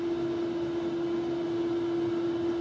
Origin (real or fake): real